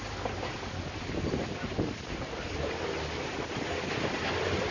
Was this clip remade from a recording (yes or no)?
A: no